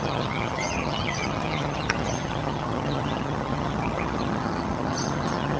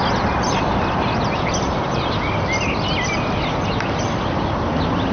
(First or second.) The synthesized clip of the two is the first